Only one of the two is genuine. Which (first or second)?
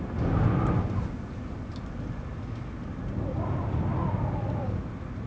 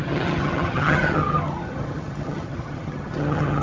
first